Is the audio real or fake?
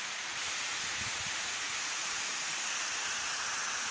fake